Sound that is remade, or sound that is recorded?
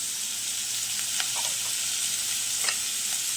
recorded